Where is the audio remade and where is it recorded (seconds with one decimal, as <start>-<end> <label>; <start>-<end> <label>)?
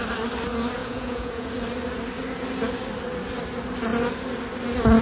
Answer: 0.0-0.8 recorded; 0.8-1.5 remade; 1.5-5.0 recorded